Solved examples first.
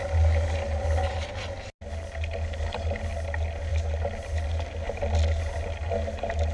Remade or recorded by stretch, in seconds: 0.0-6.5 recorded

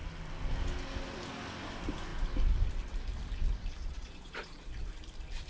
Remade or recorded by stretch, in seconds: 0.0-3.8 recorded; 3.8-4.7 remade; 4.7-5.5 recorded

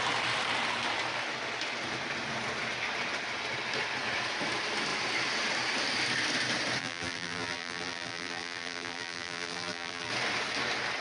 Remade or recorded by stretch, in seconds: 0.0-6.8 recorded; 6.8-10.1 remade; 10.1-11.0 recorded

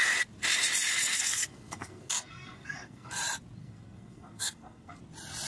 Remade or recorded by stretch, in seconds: 0.0-1.1 recorded; 1.1-3.2 remade; 3.2-3.6 recorded; 3.6-5.0 remade; 5.0-5.5 recorded